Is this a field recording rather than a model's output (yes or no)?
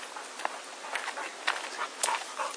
yes